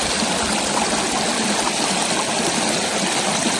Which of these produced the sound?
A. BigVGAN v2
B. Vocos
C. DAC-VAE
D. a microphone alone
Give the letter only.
D